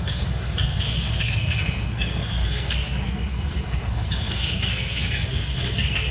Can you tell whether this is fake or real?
fake